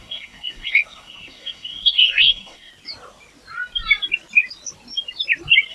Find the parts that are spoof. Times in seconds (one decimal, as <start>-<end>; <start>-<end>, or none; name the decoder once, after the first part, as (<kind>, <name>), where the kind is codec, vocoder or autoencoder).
0.0-2.7 (codec, SNAC)